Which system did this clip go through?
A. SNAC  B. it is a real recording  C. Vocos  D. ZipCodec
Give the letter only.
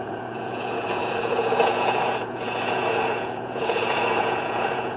C